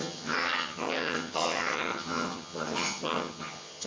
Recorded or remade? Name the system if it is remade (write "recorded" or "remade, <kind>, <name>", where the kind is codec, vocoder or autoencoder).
remade, vocoder, HiFi-GAN